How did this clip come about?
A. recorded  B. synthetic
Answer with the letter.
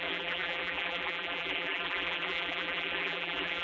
B